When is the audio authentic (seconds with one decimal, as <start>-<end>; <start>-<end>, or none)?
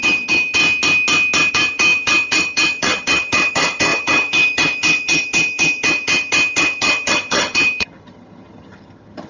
0.6-1.5